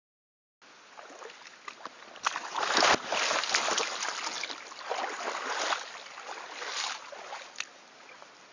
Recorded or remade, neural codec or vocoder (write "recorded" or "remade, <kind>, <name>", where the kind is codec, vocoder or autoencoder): recorded